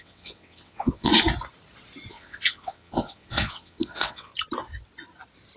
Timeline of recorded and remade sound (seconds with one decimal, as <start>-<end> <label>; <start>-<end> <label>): 0.0-1.1 remade; 1.1-2.1 recorded; 2.1-4.3 remade; 4.3-5.6 recorded